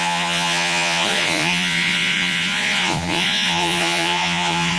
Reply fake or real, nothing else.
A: fake